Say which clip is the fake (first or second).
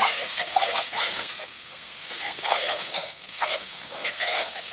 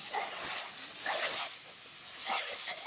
first